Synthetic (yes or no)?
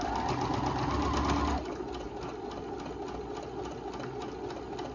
no